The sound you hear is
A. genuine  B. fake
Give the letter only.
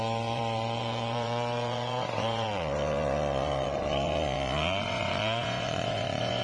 B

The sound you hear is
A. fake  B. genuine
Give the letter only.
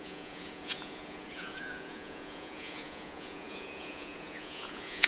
A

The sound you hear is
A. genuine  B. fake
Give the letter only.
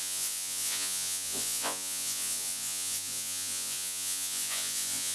B